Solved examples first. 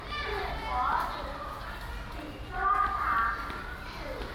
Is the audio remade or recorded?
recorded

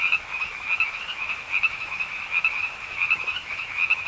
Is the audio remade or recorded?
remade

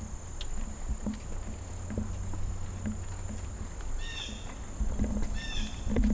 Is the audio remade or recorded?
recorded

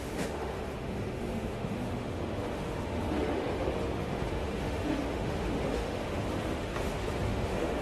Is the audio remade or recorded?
remade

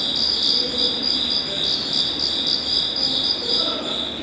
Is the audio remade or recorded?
recorded